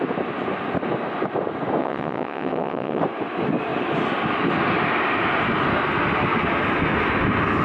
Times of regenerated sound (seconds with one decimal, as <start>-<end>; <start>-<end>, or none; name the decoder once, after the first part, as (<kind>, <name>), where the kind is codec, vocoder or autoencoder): 1.8-3.0 (vocoder, WaveNeXt)